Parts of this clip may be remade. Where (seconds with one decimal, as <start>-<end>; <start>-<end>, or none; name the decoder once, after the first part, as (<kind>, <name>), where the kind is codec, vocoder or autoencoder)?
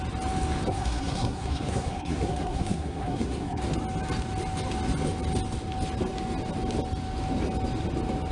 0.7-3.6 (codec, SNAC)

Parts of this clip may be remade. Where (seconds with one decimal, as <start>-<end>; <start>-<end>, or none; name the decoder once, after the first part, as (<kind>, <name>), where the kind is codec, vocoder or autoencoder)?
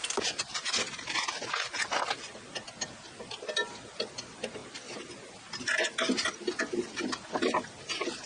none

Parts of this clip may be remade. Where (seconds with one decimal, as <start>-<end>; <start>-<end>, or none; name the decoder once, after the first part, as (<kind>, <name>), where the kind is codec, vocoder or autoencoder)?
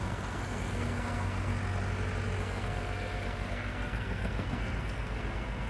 0.0-1.5 (codec, SNAC); 2.4-5.7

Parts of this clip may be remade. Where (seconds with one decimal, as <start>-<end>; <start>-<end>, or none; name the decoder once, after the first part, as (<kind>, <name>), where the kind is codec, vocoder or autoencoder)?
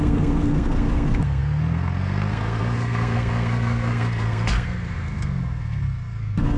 0.0-6.6 (codec, SNAC)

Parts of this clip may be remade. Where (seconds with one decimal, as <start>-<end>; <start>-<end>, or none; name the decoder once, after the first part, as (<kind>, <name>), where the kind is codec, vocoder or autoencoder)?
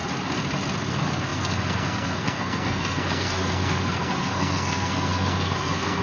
0.9-6.0 (codec, SNAC)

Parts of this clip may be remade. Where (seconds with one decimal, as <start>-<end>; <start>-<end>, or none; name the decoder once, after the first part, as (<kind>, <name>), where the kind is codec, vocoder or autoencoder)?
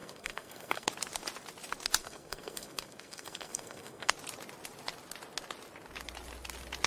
0.0-0.9 (codec, SNAC); 2.0-4.1